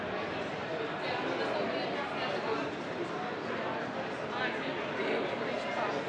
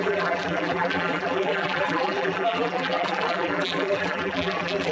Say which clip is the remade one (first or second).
second